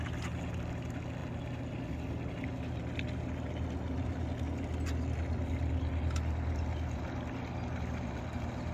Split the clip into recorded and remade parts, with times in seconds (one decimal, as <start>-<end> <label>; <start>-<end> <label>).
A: 0.0-8.7 recorded

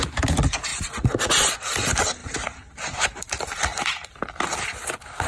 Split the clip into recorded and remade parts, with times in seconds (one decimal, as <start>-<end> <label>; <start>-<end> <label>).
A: 0.0-0.7 recorded; 0.7-1.5 remade; 1.5-2.2 recorded; 2.2-4.4 remade; 4.4-5.3 recorded

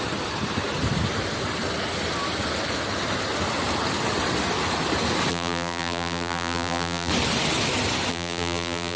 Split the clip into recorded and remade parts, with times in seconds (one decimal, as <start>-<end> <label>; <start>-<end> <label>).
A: 0.0-5.3 recorded; 5.3-7.1 remade; 7.1-8.1 recorded; 8.1-9.0 remade

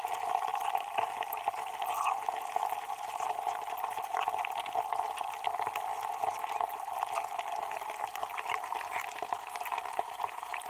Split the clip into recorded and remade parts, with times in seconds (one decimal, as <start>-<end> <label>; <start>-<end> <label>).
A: 0.0-8.3 recorded; 8.3-10.7 remade

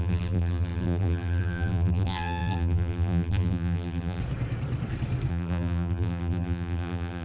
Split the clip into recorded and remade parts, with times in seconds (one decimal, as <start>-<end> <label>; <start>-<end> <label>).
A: 0.0-4.2 remade; 4.2-5.3 recorded; 5.3-7.2 remade

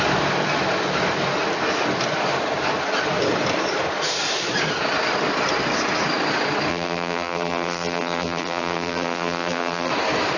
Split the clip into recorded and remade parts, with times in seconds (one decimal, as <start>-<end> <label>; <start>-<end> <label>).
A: 0.0-6.7 recorded; 6.7-9.9 remade; 9.9-10.4 recorded

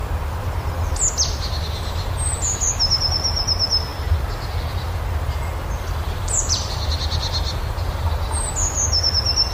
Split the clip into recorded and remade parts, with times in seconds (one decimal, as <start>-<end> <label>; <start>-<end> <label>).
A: 0.0-6.0 recorded; 6.0-8.1 remade; 8.1-9.5 recorded